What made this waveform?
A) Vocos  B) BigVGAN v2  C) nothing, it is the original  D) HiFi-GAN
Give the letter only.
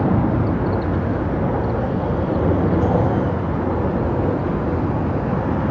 C